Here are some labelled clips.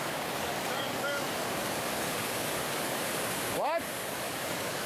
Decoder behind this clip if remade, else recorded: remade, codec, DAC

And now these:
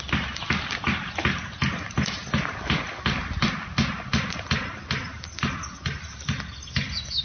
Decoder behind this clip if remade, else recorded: recorded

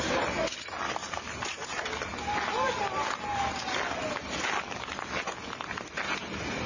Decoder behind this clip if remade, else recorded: recorded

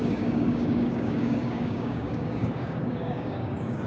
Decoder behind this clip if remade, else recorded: remade, codec, DAC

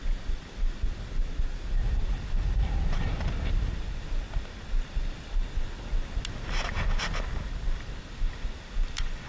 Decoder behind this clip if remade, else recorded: recorded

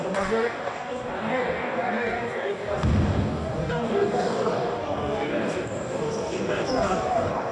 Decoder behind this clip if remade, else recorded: remade, codec, DAC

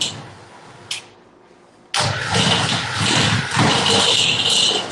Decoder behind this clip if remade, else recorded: recorded